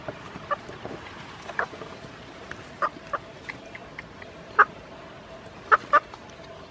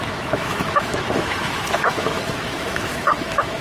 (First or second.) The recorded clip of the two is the first